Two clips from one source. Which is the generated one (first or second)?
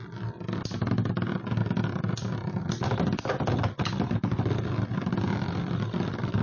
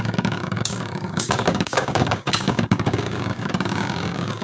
second